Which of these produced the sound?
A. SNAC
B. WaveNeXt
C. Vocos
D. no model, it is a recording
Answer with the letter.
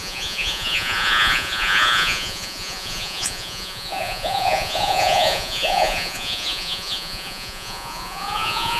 C